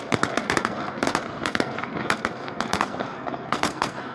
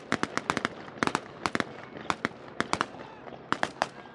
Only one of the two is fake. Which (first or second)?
first